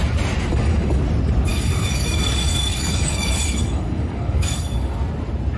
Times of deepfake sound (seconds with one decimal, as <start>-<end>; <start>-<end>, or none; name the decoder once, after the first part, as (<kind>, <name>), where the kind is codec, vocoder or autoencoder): 0.5-1.0 (codec, DAC); 1.5-4.9